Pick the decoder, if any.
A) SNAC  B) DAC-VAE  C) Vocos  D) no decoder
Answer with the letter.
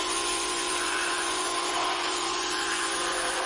C